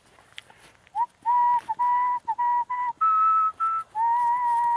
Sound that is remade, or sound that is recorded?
recorded